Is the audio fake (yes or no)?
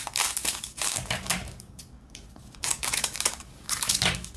yes